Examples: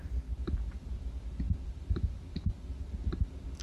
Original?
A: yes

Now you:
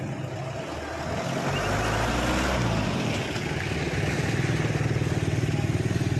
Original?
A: yes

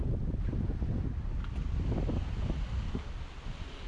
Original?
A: yes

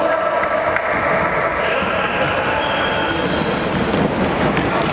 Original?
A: yes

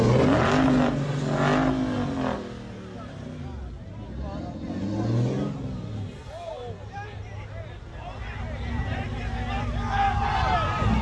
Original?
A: yes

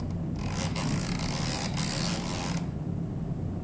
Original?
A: yes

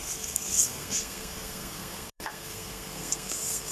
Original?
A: no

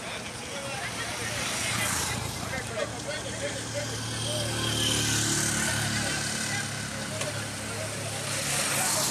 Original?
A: yes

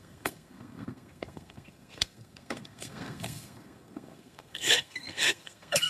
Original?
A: no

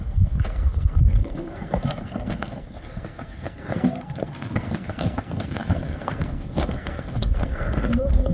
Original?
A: no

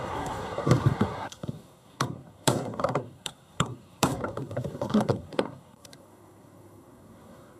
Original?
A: no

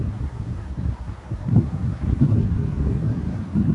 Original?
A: no